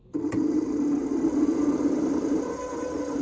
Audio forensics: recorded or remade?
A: recorded